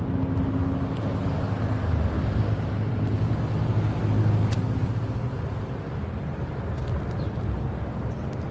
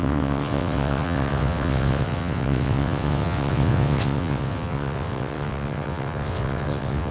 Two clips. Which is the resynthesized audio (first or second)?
second